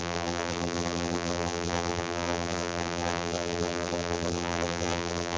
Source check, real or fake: fake